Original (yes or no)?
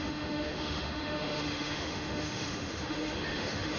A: no